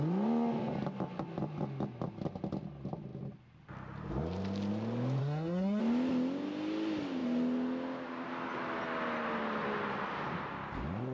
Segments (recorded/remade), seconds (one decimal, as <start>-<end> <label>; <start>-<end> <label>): 0.0-5.2 recorded; 5.2-5.8 remade; 5.8-11.1 recorded